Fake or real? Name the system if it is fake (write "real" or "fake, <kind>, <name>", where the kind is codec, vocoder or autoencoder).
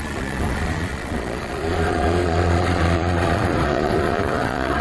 fake, vocoder, Vocos